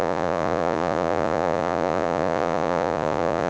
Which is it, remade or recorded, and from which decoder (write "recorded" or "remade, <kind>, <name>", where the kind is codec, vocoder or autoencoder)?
remade, vocoder, Vocos